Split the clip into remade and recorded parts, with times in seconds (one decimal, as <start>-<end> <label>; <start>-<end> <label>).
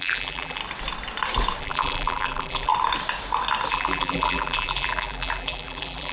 0.0-0.6 remade; 0.6-1.6 recorded; 1.6-2.7 remade; 2.7-3.7 recorded; 3.7-6.1 remade